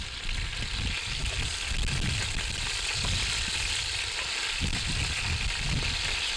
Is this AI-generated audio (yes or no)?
no